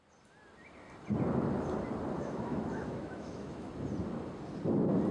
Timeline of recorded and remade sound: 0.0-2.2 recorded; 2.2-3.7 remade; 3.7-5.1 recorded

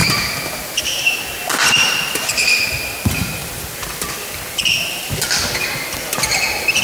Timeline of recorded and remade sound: 0.0-3.5 remade; 3.5-6.8 recorded

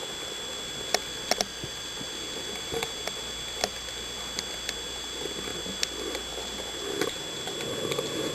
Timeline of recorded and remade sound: 0.0-8.3 recorded

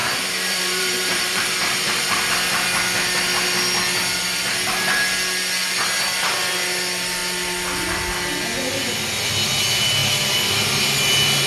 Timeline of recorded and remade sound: 0.0-2.3 remade; 2.3-11.5 recorded

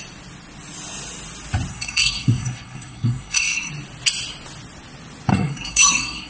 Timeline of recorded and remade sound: 0.0-1.7 recorded; 1.7-3.7 remade; 3.7-5.3 recorded; 5.3-6.3 remade

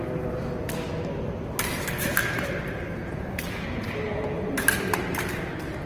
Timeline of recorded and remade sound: 0.0-3.0 recorded; 3.0-3.9 remade; 3.9-5.9 recorded

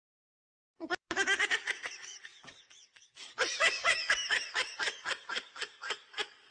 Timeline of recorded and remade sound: 0.0-6.5 remade

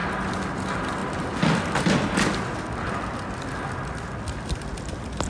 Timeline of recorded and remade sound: 0.0-5.3 recorded